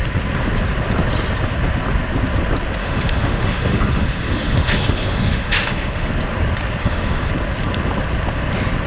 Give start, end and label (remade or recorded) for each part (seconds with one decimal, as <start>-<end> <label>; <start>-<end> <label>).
0.0-2.8 recorded; 2.8-6.1 remade; 6.1-6.8 recorded; 6.8-7.3 remade; 7.3-8.9 recorded